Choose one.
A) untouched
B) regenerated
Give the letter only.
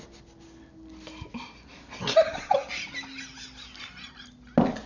A